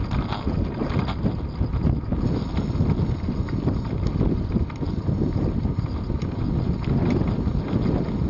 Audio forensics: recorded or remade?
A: recorded